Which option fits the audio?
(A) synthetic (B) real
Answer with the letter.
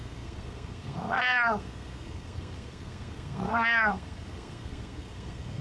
A